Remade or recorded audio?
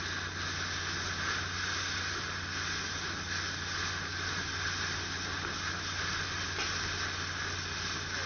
recorded